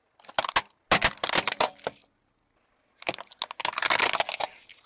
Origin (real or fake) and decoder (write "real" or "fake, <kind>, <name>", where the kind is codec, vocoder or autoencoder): real